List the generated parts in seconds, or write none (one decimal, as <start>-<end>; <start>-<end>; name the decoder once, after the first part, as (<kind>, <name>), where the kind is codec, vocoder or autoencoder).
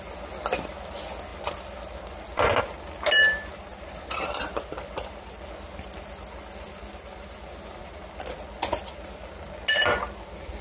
none